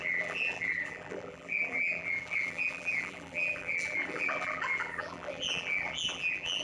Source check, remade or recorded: remade